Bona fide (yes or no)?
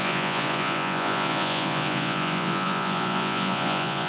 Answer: no